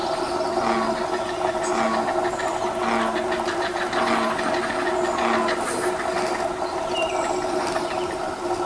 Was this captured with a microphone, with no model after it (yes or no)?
yes